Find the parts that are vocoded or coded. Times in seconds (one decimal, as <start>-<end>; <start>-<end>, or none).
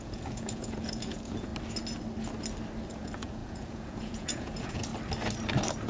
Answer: 0.0-1.5; 2.9-4.9